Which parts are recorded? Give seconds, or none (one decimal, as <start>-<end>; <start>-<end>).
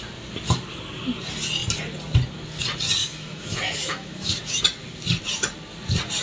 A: 0.0-3.0; 4.6-6.2